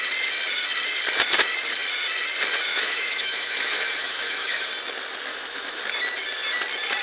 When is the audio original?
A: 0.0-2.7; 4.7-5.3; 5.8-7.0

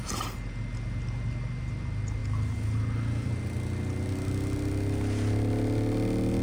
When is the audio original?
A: 0.0-6.4

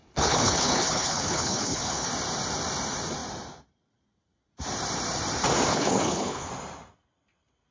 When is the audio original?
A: 2.1-5.7; 6.5-7.7

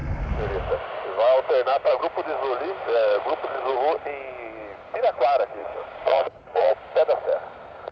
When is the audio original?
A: 0.0-5.6; 6.7-7.9